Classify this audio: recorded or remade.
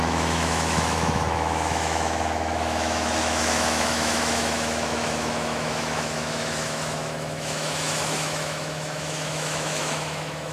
remade